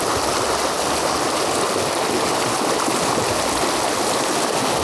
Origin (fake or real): real